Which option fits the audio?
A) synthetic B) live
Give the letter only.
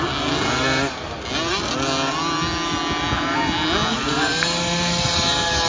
B